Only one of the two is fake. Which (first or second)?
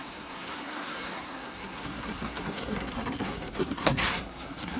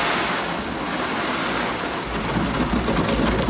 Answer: first